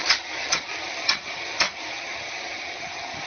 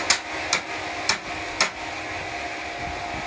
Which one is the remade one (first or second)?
first